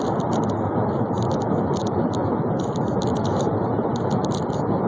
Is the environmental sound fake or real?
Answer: real